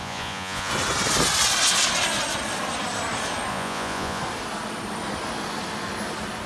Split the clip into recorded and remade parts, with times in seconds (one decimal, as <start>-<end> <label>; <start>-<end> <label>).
0.0-0.7 remade; 0.7-3.5 recorded; 3.5-4.2 remade; 4.2-6.5 recorded